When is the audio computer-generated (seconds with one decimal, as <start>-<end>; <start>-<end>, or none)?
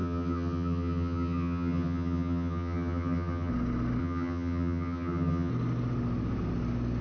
0.0-3.5; 4.0-5.5